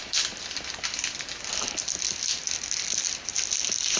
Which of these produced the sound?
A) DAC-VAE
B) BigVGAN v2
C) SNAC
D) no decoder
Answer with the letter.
D